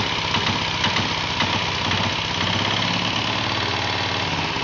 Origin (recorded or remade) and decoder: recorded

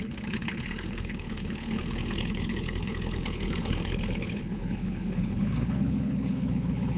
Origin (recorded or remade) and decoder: remade, codec, HILCodec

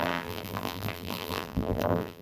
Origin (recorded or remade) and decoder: remade, vocoder, BigVGAN v2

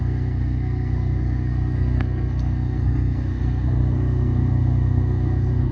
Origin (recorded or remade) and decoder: remade, codec, SNAC